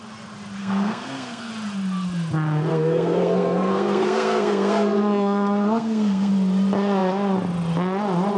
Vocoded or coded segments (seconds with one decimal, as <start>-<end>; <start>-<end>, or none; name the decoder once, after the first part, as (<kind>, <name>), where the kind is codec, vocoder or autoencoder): 0.6-1.5 (codec, SNAC); 2.7-6.3